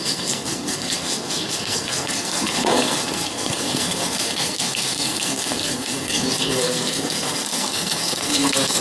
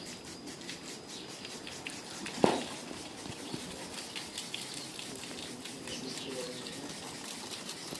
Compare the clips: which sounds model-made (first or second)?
first